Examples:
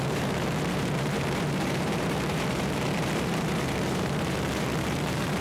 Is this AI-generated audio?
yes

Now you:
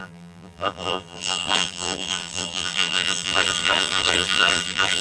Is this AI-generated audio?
yes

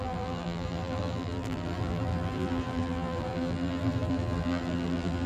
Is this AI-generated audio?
yes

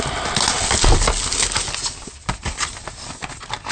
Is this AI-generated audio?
no